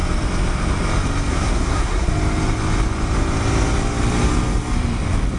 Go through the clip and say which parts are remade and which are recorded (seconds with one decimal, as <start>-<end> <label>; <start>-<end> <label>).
0.0-1.3 recorded; 1.3-2.1 remade; 2.1-5.4 recorded

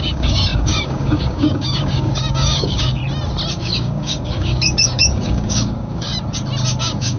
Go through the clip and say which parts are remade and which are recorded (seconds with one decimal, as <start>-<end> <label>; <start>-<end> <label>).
0.0-3.0 remade; 3.0-3.6 recorded; 3.6-6.1 remade; 6.1-6.8 recorded; 6.8-7.2 remade

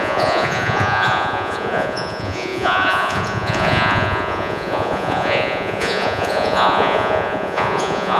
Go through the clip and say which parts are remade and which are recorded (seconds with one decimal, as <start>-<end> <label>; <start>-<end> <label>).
0.0-8.2 remade

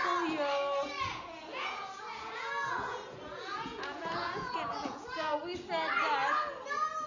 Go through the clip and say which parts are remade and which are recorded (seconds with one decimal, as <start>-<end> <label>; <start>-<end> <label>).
0.0-1.1 recorded; 1.1-5.4 remade; 5.4-7.1 recorded

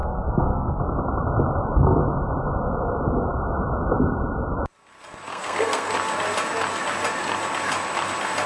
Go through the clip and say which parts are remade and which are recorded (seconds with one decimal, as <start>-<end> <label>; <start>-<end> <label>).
0.0-0.8 remade; 0.8-5.3 recorded; 5.3-5.9 remade; 5.9-8.5 recorded

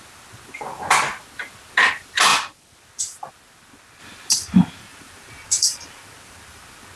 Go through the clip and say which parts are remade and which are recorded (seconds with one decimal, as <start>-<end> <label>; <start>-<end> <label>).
0.0-4.9 recorded; 4.9-6.6 remade; 6.6-7.0 recorded

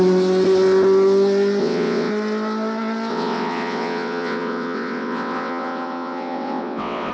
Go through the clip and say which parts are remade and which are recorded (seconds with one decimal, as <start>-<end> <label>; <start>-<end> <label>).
0.0-1.6 recorded; 1.6-2.1 remade; 2.1-3.1 recorded; 3.1-7.1 remade